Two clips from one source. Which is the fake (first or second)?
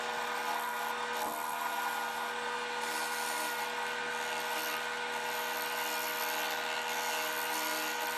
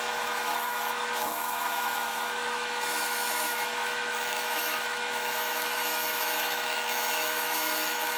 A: second